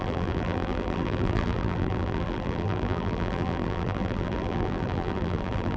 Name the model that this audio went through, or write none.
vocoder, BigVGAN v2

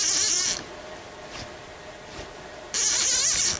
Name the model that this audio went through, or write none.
vocoder, BigVGAN v2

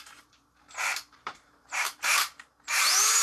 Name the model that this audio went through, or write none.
vocoder, BigVGAN v2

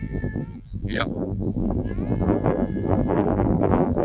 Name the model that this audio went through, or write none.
vocoder, BigVGAN v2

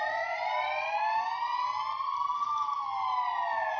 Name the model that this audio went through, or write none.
none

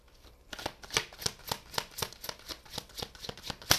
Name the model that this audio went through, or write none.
none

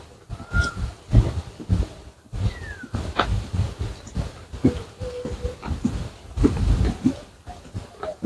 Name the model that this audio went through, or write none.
none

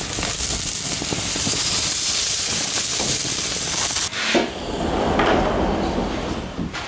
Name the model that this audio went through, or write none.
none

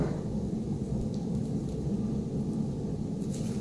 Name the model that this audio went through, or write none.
none